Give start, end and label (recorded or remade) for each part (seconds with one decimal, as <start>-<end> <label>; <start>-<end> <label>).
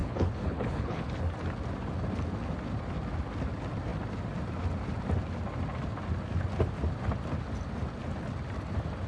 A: 0.0-1.3 remade; 1.3-9.1 recorded